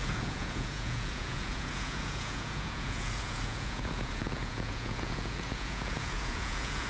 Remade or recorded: remade